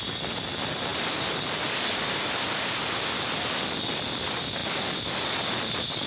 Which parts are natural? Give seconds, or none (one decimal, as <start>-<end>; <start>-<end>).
0.0-6.1